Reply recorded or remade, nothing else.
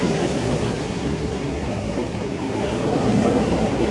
remade